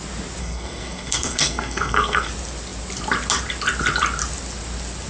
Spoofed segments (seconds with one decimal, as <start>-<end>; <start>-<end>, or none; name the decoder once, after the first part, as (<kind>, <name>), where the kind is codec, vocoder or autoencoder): 0.4-2.3 (codec, SNAC)